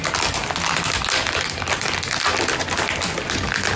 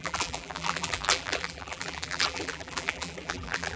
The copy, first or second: second